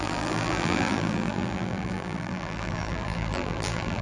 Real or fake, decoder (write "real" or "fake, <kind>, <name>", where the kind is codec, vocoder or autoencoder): fake, vocoder, BigVGAN v2